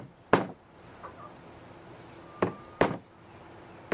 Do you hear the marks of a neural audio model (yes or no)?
no